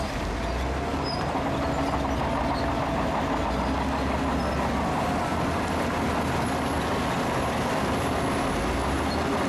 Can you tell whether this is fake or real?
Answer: real